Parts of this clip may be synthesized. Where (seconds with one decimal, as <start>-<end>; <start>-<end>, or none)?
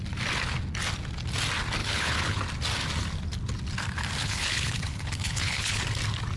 1.8-2.4; 4.2-5.8